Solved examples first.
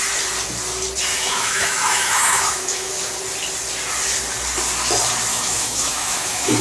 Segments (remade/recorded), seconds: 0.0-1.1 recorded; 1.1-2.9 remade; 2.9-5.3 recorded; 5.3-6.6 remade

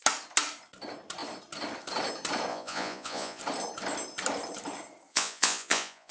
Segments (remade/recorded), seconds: 0.0-2.5 recorded; 2.5-3.4 remade; 3.4-5.1 recorded; 5.1-6.1 remade

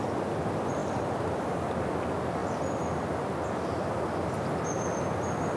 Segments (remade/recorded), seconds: 0.0-0.8 recorded; 0.8-1.9 remade; 1.9-5.6 recorded

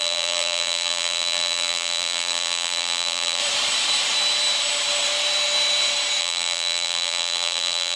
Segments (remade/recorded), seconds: 0.0-3.4 remade; 3.4-6.2 recorded; 6.2-8.0 remade

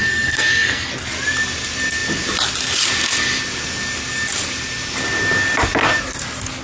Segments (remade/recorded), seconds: 0.0-0.9 remade; 0.9-6.6 recorded

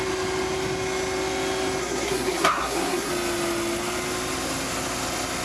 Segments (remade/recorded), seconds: 0.0-1.8 recorded; 1.8-3.1 remade; 3.1-5.4 recorded

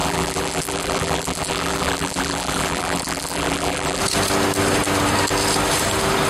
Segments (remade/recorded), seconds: 0.0-4.0 remade; 4.0-6.3 recorded